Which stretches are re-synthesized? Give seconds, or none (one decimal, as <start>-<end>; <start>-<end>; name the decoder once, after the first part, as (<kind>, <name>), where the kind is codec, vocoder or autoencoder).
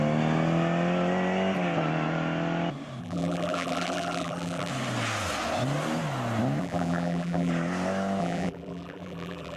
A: 3.0-4.7 (vocoder, BigVGAN v2); 6.6-7.5; 8.2-9.6